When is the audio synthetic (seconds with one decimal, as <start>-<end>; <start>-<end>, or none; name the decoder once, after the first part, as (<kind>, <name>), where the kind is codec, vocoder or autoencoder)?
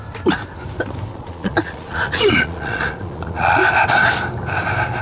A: 1.1-3.6 (vocoder, Vocos)